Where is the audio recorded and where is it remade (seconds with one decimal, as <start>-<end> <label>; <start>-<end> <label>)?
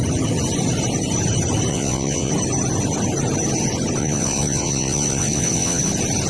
0.0-1.7 recorded; 1.7-2.3 remade; 2.3-4.0 recorded; 4.0-5.8 remade; 5.8-6.3 recorded